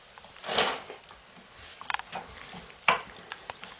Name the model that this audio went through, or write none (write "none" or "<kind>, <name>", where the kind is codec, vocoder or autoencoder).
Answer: none